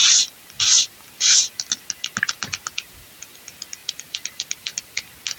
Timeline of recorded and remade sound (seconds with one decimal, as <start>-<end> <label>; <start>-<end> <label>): 0.0-3.8 recorded; 3.8-4.9 remade; 4.9-5.4 recorded

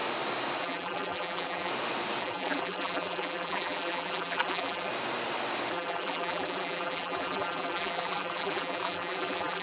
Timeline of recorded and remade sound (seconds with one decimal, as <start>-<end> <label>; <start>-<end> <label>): 0.0-0.6 recorded; 0.6-1.7 remade; 1.7-2.2 recorded; 2.2-4.9 remade; 4.9-5.7 recorded; 5.7-9.6 remade

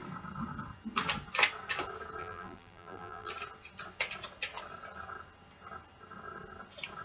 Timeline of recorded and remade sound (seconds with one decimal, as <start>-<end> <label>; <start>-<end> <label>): 0.0-2.2 recorded; 2.2-3.3 remade; 3.3-7.0 recorded